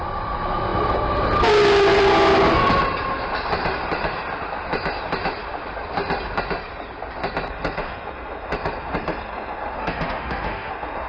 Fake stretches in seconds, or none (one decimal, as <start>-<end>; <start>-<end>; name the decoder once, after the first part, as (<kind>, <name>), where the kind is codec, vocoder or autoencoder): 9.8-10.7 (autoencoder, DAC-VAE)